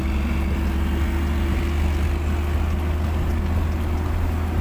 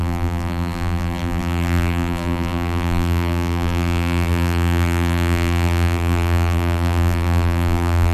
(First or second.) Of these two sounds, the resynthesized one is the second